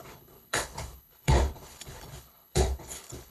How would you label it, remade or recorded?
remade